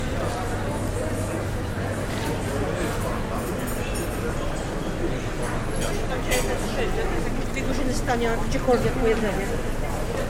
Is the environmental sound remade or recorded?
recorded